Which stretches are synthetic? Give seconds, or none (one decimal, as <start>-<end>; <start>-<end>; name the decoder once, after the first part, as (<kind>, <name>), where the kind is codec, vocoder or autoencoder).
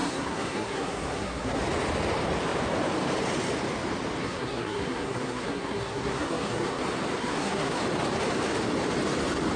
0.0-1.6 (codec, SNAC); 4.2-6.8; 7.2-7.8